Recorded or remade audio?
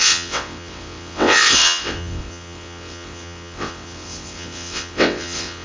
remade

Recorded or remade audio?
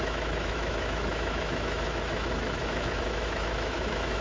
remade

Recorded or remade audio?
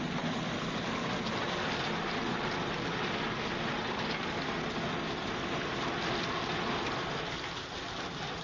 recorded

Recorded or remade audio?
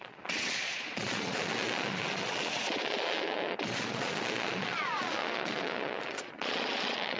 remade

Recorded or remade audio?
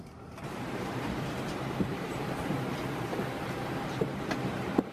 remade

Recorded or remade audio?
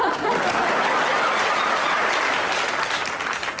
recorded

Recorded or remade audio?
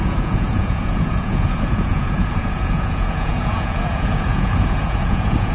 remade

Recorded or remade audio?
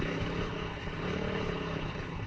remade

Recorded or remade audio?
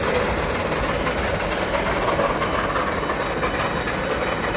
recorded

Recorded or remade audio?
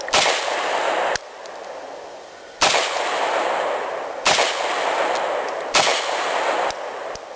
recorded